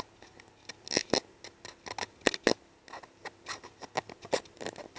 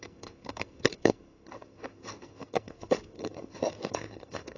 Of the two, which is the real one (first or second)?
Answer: first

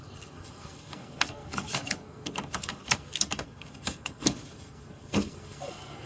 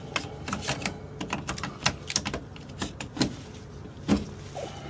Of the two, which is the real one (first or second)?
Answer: second